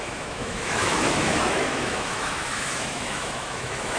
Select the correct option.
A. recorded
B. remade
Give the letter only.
B